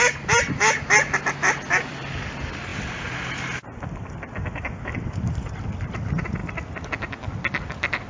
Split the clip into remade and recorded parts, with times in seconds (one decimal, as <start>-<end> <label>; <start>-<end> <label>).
0.0-8.1 recorded